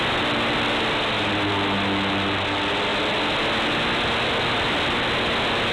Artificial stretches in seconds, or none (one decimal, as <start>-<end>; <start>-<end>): none